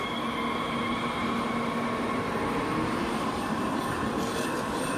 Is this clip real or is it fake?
real